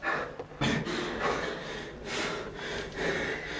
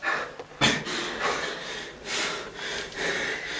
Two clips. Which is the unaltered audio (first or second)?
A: first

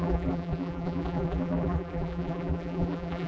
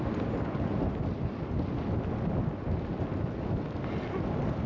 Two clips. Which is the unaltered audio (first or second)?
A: second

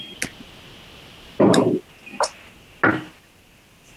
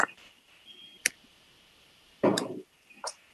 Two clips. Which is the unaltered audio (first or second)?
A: first